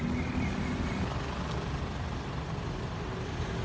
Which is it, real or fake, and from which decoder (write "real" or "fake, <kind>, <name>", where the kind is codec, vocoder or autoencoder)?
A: real